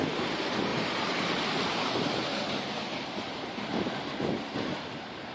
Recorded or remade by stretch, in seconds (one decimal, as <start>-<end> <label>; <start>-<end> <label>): 0.0-0.7 recorded; 0.7-3.9 remade; 3.9-5.3 recorded